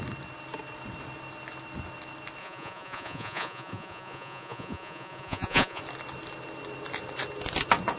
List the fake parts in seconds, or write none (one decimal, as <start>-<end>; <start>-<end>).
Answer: 2.4-5.8